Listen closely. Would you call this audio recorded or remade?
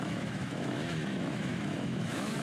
remade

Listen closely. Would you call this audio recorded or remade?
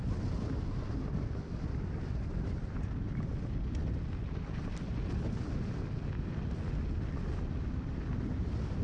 recorded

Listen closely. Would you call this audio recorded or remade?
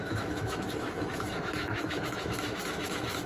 remade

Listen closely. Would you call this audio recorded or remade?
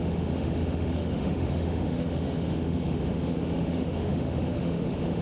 remade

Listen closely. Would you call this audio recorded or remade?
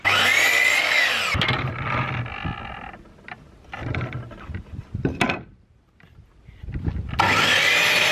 recorded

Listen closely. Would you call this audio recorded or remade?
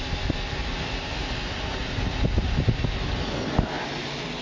recorded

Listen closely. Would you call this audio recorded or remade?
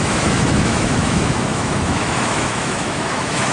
remade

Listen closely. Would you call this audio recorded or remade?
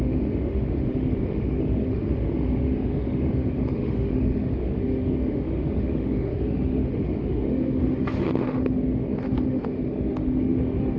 remade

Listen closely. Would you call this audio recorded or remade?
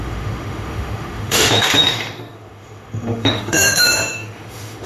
remade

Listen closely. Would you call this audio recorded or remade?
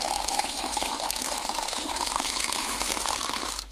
remade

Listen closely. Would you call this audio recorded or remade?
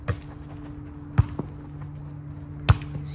recorded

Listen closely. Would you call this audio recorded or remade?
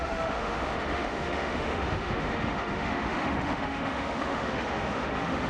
remade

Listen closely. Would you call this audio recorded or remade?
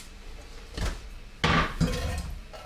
recorded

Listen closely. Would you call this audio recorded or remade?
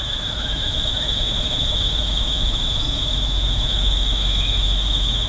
remade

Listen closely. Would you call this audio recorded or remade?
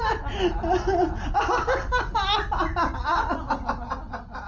recorded